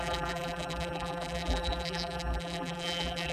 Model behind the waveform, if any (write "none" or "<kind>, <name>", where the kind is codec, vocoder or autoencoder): vocoder, BigVGAN v2